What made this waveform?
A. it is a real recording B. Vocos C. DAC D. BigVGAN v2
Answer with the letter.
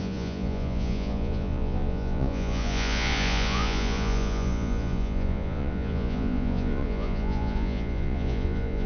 B